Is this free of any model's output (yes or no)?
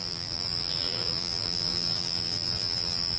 no